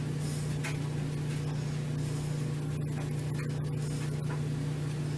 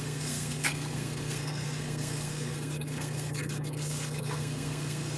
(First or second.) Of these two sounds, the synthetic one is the second